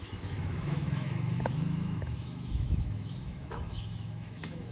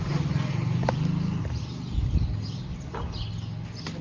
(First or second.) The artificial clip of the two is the first